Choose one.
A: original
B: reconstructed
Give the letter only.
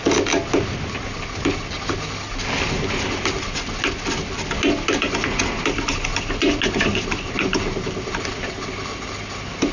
A